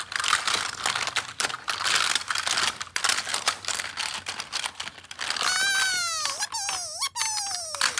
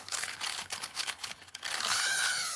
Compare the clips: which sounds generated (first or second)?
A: second